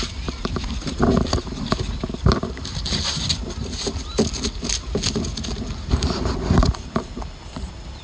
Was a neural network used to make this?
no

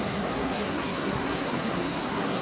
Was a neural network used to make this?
yes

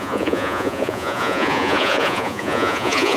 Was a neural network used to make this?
yes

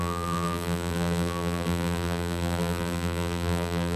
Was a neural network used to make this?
yes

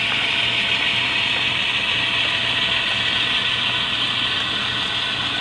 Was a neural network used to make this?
no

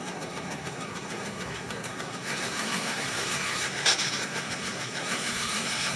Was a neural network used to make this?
yes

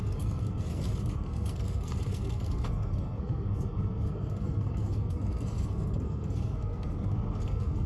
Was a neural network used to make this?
yes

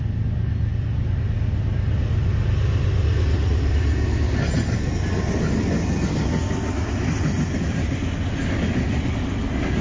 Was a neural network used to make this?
no